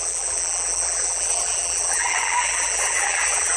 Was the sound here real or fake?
fake